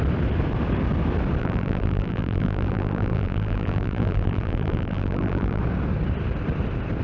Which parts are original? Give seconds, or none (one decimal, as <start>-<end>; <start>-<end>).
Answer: 0.0-1.4; 5.6-7.0